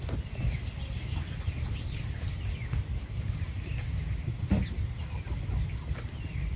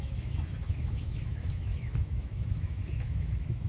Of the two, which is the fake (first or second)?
second